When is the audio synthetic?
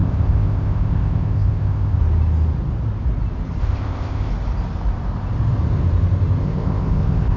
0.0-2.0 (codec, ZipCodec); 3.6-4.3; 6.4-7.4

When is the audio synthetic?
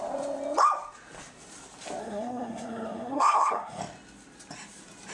2.0-3.8 (codec, SNAC)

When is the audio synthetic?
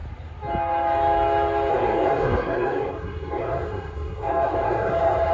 1.7-5.3 (codec, SNAC)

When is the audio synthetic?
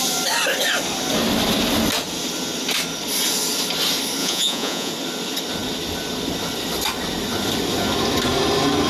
4.2-4.9 (vocoder, Vocos)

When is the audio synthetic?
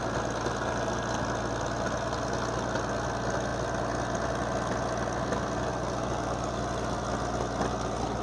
none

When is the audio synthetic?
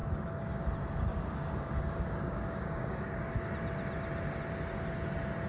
0.0-0.6 (codec, DAC); 1.1-3.5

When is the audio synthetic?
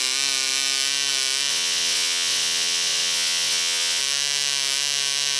1.5-4.0 (vocoder, WaveNeXt)